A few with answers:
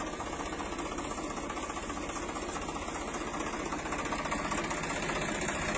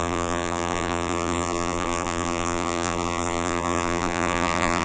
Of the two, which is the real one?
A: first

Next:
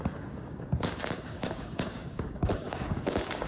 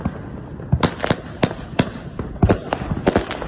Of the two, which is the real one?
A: second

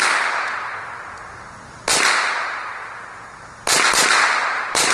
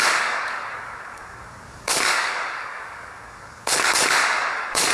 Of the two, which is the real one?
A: first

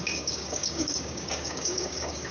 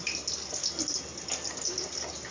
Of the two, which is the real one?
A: second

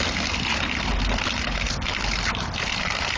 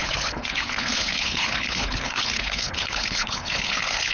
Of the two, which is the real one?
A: first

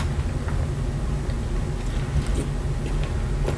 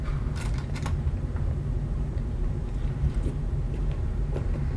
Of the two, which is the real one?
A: first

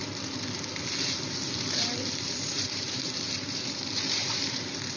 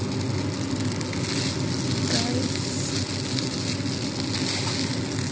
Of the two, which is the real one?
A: second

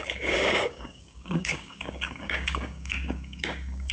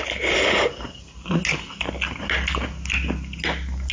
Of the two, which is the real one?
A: second